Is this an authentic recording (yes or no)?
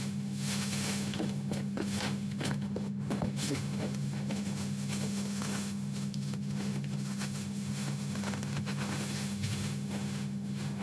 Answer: no